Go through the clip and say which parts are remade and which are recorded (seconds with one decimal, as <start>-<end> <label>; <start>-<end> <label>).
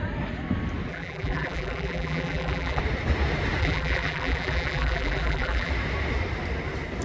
0.0-0.9 recorded; 0.9-2.8 remade; 2.8-3.6 recorded; 3.6-5.7 remade; 5.7-7.0 recorded